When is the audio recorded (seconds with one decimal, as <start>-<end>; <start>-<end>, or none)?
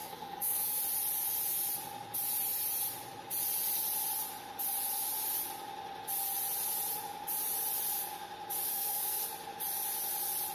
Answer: 0.8-8.7; 9.2-10.5